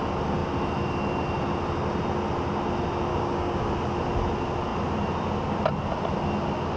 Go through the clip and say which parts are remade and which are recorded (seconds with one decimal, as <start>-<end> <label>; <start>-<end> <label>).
0.0-3.1 recorded; 3.1-3.7 remade; 3.7-6.8 recorded